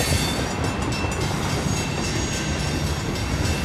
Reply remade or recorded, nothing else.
recorded